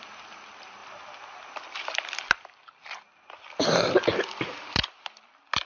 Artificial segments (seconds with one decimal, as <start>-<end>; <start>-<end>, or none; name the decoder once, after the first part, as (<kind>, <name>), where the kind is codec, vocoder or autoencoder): none